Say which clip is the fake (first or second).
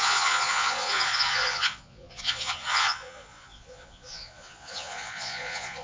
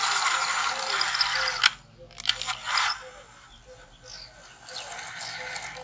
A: first